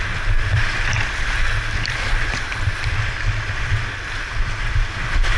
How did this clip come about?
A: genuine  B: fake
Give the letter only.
A